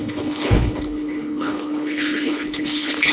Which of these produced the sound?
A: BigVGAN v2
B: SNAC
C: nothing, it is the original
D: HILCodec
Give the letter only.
D